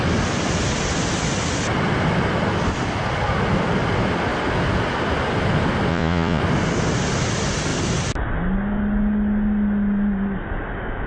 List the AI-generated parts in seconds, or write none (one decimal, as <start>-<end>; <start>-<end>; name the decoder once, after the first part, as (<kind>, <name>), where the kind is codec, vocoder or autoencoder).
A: 5.9-6.4 (vocoder, Vocos)